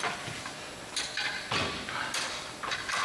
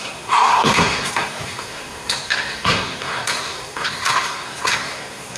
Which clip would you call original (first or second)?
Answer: first